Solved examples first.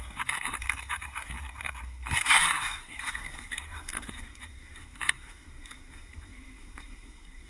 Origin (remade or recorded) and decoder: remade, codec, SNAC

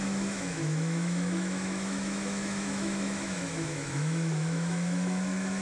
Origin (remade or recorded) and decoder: remade, autoencoder, DAC-VAE